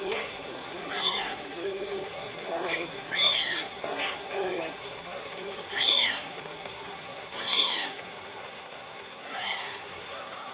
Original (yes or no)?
no